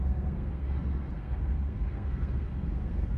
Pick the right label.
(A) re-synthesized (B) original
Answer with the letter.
A